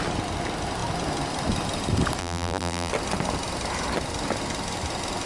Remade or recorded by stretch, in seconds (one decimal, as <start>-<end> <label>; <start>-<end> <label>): 0.0-2.2 recorded; 2.2-2.9 remade; 2.9-5.3 recorded